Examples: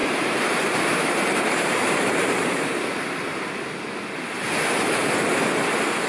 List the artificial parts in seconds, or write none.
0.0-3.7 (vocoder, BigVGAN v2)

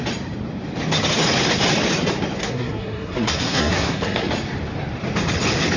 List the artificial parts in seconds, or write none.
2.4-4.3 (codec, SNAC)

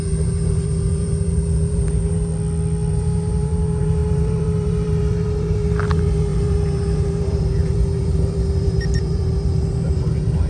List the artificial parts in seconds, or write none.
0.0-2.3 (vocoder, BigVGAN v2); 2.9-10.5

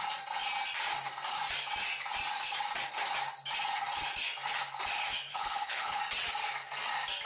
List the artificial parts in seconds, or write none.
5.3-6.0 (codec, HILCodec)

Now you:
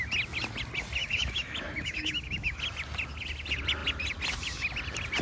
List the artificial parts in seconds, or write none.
1.0-2.6 (autoencoder, DAC-VAE)

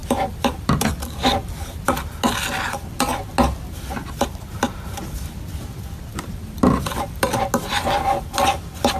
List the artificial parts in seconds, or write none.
0.0-0.9 (vocoder, BigVGAN v2); 6.1-7.4

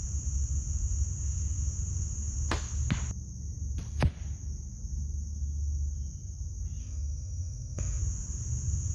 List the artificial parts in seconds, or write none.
6.8-8.0 (autoencoder, DAC-VAE)

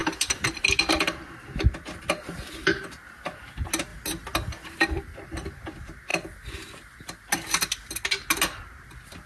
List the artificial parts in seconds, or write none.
none